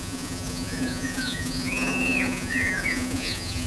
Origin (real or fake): fake